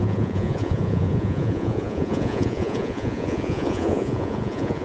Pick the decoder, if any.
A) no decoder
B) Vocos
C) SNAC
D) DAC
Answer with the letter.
B